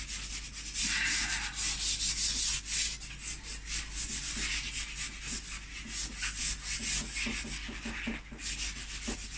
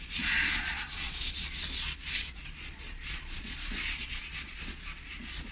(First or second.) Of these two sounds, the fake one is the second